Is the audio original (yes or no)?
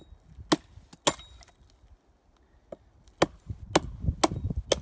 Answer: yes